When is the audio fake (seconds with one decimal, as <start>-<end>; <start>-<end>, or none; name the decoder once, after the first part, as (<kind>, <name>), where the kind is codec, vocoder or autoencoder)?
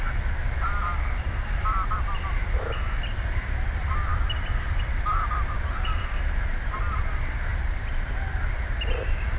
none